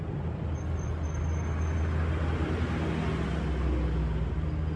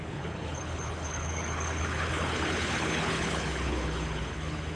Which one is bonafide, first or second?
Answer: first